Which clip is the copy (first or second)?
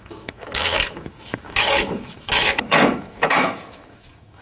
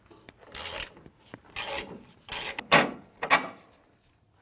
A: first